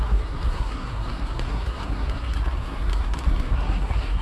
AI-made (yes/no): yes